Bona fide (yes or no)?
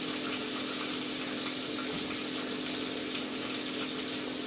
yes